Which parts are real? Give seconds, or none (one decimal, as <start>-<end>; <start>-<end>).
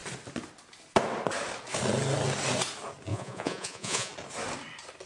0.0-3.1; 4.1-5.1